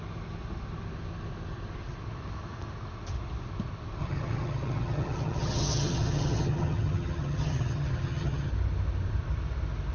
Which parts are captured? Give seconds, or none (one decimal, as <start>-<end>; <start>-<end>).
0.0-4.0; 8.5-9.9